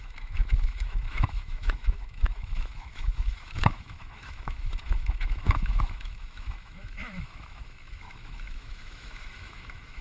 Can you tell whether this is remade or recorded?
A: remade